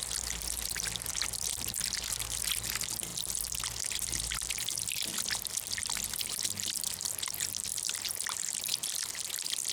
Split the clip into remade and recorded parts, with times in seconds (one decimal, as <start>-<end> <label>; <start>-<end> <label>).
0.0-3.1 recorded; 3.1-3.6 remade; 3.6-5.8 recorded; 5.8-7.1 remade; 7.1-7.7 recorded; 7.7-8.4 remade; 8.4-9.7 recorded

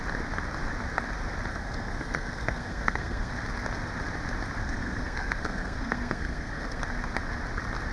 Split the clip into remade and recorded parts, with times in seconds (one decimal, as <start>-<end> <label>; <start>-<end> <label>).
0.0-1.5 recorded; 1.5-3.3 remade; 3.3-4.6 recorded; 4.6-6.8 remade; 6.8-7.9 recorded